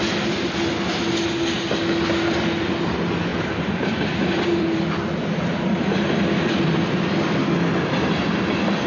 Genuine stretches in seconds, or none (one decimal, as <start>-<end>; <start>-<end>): 0.0-3.3; 4.8-8.9